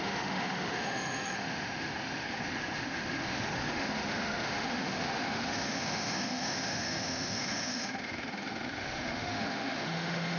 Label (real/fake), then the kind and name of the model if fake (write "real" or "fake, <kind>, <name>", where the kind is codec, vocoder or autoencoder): fake, autoencoder, DAC-VAE